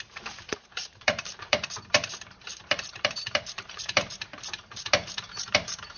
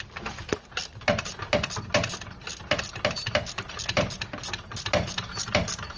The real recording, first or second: second